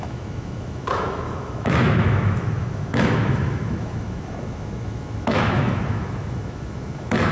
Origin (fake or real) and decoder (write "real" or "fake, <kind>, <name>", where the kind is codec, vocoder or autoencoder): fake, autoencoder, DAC-VAE